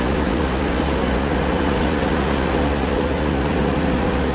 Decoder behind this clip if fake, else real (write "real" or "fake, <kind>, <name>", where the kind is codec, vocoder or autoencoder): fake, vocoder, Vocos